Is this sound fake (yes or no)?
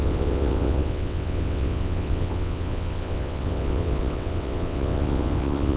yes